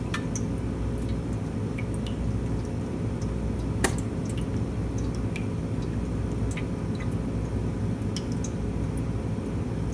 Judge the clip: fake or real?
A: real